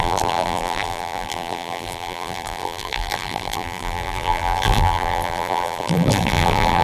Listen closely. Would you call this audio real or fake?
fake